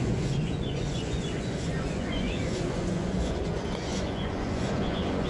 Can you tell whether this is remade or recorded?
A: remade